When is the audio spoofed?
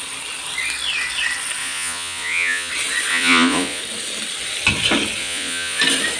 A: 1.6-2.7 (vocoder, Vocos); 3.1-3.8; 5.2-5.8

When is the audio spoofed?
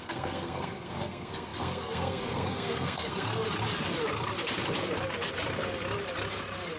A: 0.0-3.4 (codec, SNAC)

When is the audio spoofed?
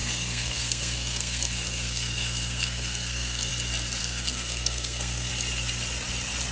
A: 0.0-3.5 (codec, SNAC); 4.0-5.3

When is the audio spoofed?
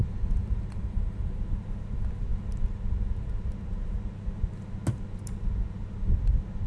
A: 0.4-1.4 (vocoder, BigVGAN v2)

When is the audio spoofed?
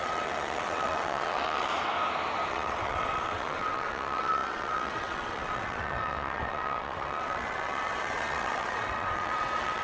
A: 0.0-1.7 (vocoder, WaveNeXt); 2.5-9.8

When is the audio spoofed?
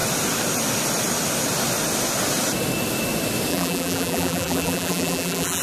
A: 3.5-5.6 (vocoder, BigVGAN v2)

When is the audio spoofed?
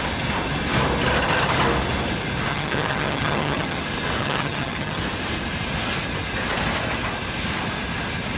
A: 2.5-3.8 (vocoder, HiFi-GAN); 4.2-5.0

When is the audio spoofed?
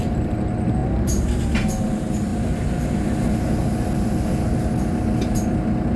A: 0.8-1.4 (vocoder, BigVGAN v2)